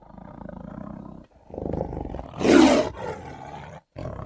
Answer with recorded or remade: recorded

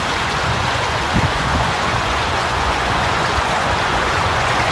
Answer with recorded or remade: remade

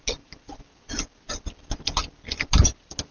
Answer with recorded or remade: recorded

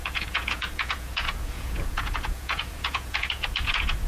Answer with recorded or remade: remade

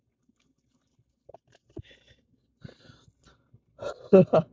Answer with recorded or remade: recorded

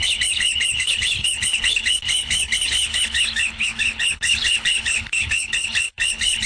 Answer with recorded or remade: remade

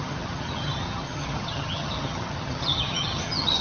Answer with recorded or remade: remade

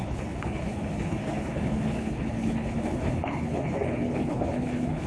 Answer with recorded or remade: remade